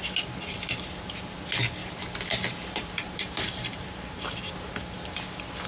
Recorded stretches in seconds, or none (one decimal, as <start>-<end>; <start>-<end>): 0.0-1.8; 4.5-5.7